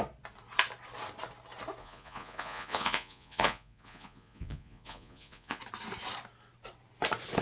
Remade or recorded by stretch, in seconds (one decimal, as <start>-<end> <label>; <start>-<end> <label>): 0.0-1.8 recorded; 1.8-5.6 remade; 5.6-7.4 recorded